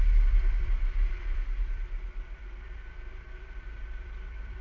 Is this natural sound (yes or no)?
no